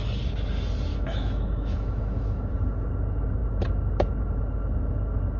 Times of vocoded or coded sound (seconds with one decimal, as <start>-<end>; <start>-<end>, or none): 0.9-2.5